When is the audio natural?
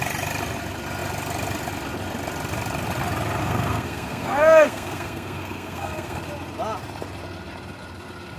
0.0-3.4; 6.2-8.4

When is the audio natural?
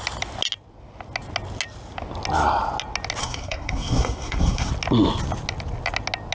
0.0-3.2; 4.7-6.3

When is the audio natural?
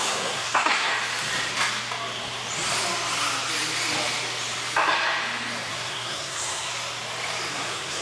0.9-5.7; 6.7-7.5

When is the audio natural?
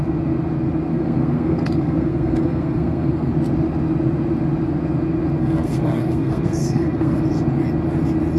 0.0-0.9; 3.3-5.4; 7.2-8.4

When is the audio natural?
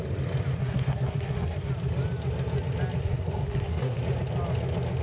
0.0-0.6; 1.7-3.0; 4.0-5.0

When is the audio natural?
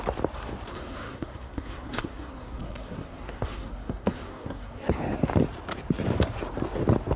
0.0-0.7; 5.0-7.2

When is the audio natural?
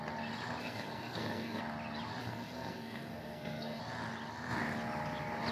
0.0-0.6; 1.6-2.2; 3.8-5.5